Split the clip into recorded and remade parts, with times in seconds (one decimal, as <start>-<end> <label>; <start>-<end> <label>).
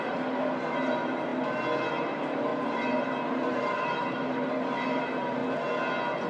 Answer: 0.0-1.3 remade; 1.3-1.9 recorded; 1.9-5.4 remade; 5.4-6.3 recorded